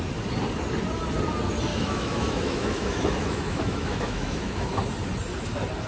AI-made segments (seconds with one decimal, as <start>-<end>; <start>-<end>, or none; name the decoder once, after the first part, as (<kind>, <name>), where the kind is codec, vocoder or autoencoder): 1.7-4.8 (autoencoder, DAC-VAE)